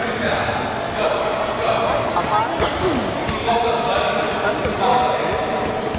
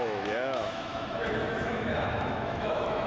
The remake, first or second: second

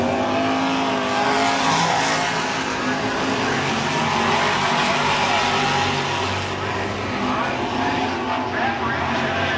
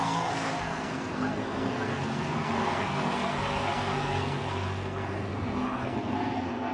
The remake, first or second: second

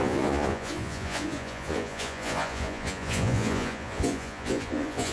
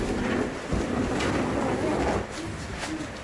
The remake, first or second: first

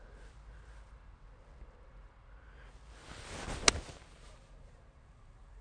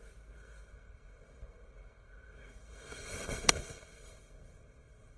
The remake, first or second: second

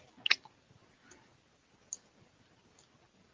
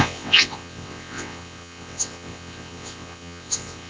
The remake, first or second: second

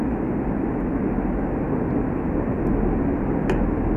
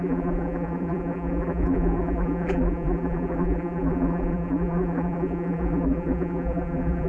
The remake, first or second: second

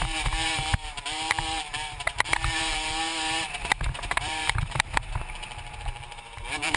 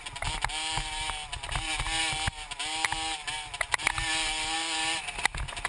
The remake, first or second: first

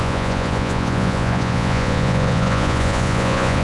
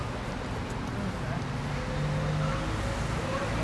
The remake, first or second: first